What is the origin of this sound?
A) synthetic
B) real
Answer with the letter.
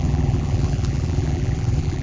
A